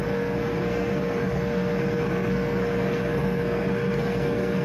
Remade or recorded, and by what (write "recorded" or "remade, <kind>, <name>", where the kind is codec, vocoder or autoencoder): remade, codec, SNAC